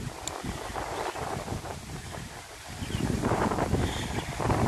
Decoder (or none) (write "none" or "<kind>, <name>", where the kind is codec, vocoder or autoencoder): vocoder, BigVGAN v2